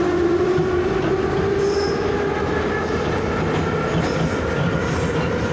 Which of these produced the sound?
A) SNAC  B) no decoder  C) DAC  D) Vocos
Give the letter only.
B